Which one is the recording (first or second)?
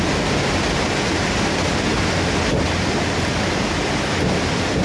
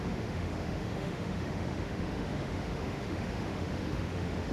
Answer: first